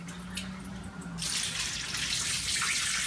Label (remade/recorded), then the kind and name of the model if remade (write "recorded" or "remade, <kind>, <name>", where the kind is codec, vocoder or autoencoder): recorded